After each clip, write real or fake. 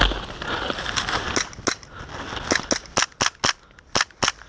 real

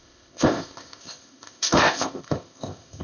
fake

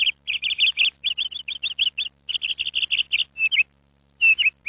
real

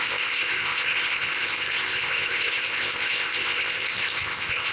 fake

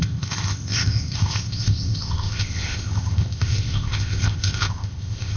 fake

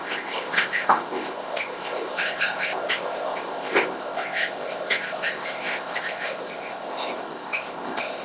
fake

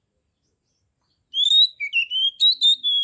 real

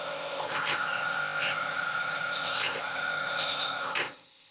fake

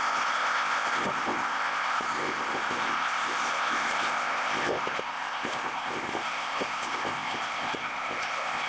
fake